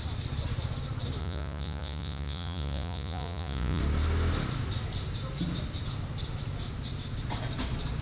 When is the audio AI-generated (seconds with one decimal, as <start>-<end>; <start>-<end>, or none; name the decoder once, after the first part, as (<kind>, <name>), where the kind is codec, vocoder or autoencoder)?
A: 1.2-3.8 (vocoder, Vocos)